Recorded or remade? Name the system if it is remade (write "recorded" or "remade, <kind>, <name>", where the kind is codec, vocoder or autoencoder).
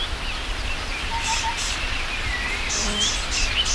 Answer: recorded